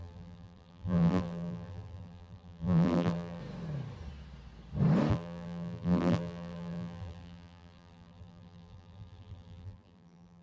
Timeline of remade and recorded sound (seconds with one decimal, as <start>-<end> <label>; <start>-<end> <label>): 0.0-3.4 remade; 3.4-5.1 recorded; 5.1-10.4 remade